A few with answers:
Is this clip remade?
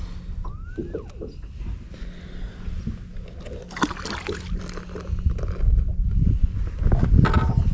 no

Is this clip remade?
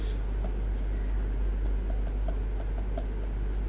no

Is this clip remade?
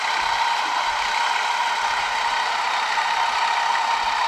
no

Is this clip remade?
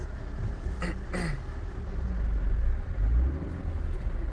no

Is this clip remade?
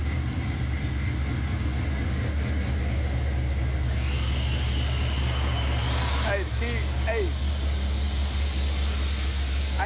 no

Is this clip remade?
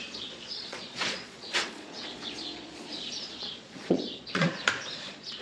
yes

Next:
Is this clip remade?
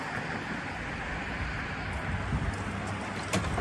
no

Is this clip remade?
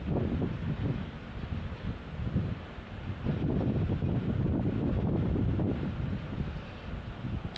no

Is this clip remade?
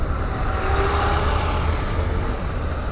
no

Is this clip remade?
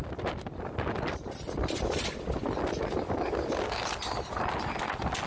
no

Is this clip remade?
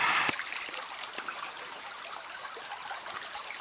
no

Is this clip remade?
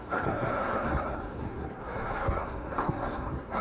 yes